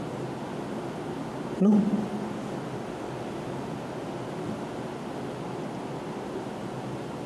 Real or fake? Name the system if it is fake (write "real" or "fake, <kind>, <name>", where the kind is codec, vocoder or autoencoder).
real